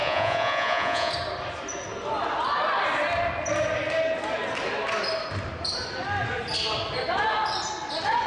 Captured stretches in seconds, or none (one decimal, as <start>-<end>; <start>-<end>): 1.1-8.3

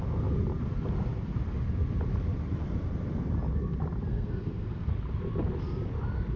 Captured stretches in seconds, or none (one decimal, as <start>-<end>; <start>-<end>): 0.0-4.1; 4.9-6.4

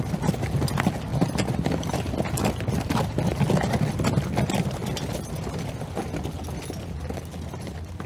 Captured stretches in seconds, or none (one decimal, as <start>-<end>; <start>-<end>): 0.0-8.1

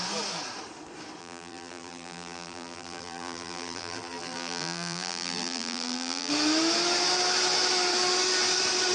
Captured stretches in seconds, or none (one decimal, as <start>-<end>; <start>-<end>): 0.0-1.2; 6.3-8.9

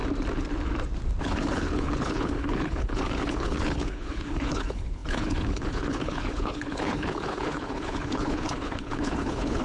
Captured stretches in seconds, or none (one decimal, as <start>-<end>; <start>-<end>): 0.0-1.2

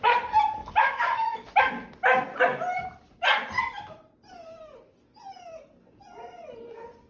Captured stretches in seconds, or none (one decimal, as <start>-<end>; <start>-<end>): 0.0-0.6; 1.6-7.1

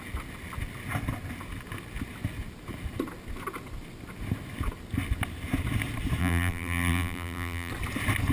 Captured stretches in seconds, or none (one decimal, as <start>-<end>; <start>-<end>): 0.0-6.2; 7.7-8.3

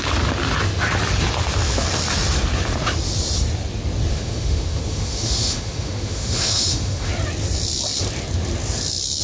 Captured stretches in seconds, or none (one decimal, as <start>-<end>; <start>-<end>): 0.0-4.1; 7.1-9.2